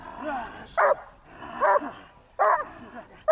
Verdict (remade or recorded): recorded